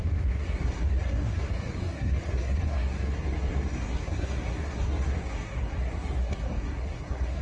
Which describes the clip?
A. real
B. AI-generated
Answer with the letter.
B